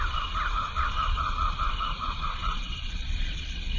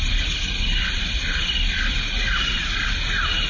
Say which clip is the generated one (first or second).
first